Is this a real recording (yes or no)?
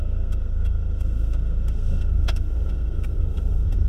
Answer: no